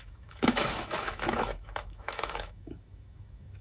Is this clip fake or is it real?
fake